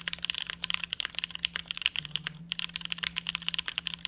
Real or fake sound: real